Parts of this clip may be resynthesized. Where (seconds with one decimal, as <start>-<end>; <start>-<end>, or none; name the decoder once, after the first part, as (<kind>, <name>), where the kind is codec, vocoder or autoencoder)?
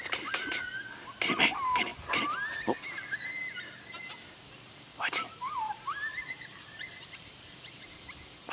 4.9-8.5 (vocoder, BigVGAN v2)